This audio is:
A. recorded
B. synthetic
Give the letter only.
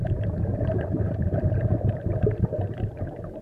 B